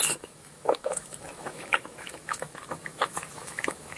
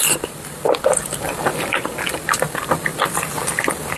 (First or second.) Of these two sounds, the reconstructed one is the first